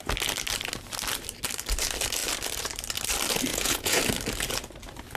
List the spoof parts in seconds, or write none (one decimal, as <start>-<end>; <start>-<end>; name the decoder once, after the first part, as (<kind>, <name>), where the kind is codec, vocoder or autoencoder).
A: 3.5-4.0 (vocoder, Vocos)